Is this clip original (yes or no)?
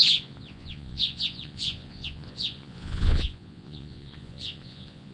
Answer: no